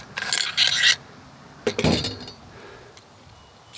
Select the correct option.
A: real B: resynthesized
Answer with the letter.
A